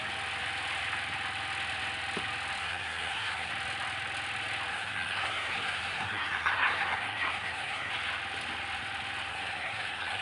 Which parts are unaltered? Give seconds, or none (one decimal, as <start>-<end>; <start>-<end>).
0.0-2.6; 3.5-4.7; 7.9-9.3